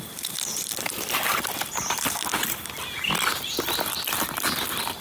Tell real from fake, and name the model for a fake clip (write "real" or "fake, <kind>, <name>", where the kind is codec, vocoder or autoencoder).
real